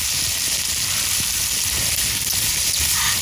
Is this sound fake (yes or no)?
no